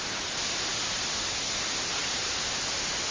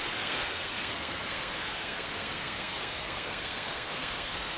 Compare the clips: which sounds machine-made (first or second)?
second